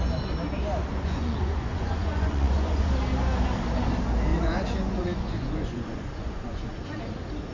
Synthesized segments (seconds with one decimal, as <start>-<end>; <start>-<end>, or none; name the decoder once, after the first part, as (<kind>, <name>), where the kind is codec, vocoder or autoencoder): 0.9-2.9 (vocoder, Vocos); 4.3-7.0

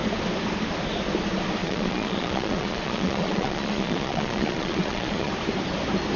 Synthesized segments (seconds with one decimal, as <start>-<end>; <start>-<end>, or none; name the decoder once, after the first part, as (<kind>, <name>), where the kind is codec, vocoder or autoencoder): 1.6-5.3 (vocoder, Vocos)

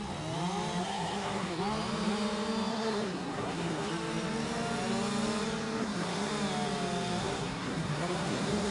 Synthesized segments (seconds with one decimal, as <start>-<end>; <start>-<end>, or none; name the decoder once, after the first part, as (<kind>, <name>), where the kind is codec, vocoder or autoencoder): 0.8-1.6 (codec, SNAC); 2.7-3.9; 5.8-6.3; 7.2-8.7

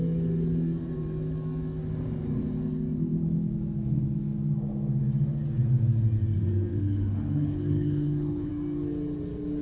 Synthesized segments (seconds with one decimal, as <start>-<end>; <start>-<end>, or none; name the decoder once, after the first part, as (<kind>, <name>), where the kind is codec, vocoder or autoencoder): 6.7-8.5 (codec, HILCodec)

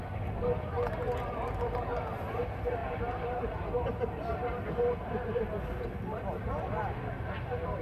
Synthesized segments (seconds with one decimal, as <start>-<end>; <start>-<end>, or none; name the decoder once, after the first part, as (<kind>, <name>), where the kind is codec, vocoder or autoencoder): 2.8-6.0 (vocoder, BigVGAN v2)

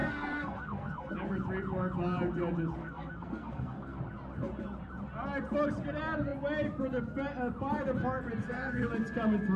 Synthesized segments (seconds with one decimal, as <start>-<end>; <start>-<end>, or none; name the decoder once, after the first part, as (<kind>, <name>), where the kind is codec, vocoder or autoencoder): 0.0-1.1 (codec, SNAC); 2.8-4.0; 8.4-8.9

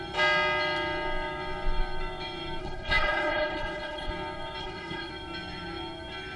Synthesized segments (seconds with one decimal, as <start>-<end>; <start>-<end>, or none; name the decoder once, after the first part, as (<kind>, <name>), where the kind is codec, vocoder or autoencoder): 2.6-4.1 (codec, HILCodec); 4.6-5.1